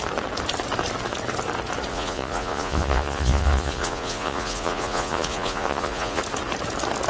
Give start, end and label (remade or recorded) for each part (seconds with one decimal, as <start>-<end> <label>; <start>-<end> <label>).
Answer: 0.0-1.9 recorded; 1.9-6.2 remade; 6.2-7.1 recorded